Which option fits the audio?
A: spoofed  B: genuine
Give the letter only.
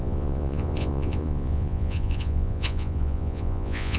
A